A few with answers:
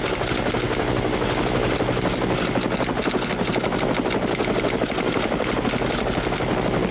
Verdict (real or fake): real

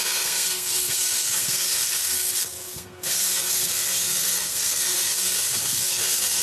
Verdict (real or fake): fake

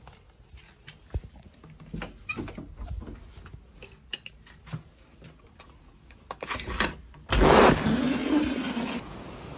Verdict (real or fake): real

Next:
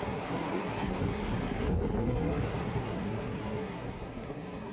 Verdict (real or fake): fake